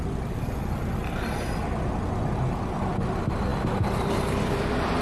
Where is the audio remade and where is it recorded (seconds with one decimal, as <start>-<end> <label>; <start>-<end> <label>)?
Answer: 0.0-5.0 recorded